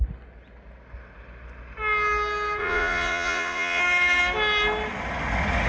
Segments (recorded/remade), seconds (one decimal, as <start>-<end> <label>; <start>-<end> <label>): 0.0-2.6 recorded; 2.6-3.8 remade; 3.8-5.7 recorded